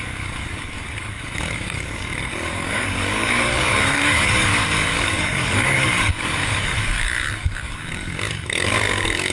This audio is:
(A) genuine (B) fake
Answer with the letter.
B